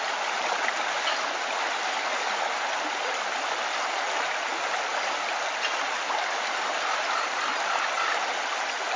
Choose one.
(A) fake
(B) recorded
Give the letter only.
B